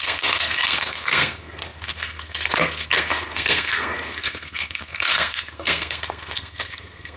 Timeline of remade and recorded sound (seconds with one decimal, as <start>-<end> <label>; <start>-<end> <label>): 0.0-7.2 remade